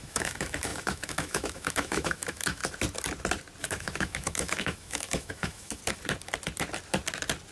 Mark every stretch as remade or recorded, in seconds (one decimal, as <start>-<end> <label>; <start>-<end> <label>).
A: 0.0-2.6 remade; 2.6-3.6 recorded; 3.6-5.8 remade; 5.8-7.5 recorded